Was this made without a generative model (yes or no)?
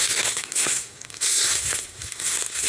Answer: no